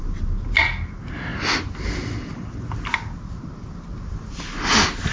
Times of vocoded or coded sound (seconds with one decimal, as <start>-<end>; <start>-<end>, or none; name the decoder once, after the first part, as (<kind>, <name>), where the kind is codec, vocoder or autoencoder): none